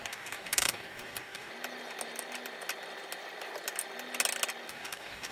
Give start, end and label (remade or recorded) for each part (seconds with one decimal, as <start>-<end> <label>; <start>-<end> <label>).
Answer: 0.0-1.5 remade; 1.5-4.7 recorded; 4.7-5.3 remade